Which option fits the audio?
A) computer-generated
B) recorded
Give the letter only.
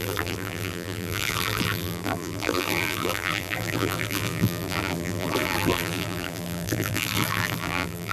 A